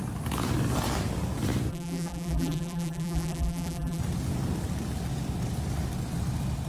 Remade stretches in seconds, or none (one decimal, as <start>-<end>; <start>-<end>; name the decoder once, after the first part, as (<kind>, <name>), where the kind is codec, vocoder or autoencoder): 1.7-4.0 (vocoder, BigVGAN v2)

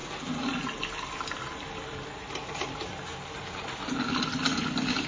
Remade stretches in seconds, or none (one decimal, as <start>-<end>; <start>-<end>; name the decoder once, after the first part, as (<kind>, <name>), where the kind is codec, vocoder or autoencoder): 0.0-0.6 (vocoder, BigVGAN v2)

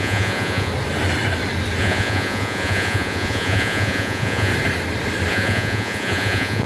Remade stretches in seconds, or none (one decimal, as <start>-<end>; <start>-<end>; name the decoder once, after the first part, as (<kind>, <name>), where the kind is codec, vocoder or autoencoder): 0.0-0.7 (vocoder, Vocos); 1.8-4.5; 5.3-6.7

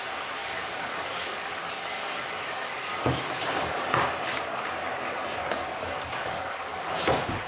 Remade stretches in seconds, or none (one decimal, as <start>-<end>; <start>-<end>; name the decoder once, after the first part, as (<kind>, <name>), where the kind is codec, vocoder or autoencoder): 0.4-3.4 (codec, DAC); 5.4-6.9

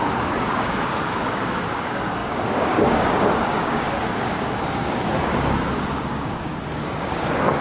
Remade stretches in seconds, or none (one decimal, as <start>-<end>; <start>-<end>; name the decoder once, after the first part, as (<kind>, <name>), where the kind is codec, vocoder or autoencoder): 0.0-7.6 (codec, DAC)

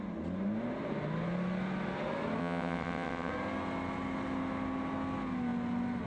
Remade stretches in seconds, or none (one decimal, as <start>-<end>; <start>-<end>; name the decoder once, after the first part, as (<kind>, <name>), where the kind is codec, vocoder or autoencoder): 2.4-3.3 (vocoder, WaveNeXt)

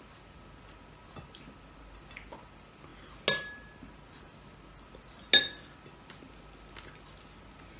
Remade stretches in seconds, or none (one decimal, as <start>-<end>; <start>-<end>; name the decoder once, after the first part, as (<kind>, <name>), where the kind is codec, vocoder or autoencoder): none

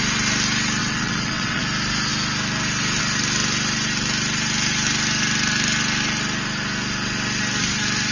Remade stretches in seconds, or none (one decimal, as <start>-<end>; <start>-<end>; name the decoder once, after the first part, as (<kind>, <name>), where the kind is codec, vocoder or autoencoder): 0.8-1.6 (vocoder, WaveNeXt)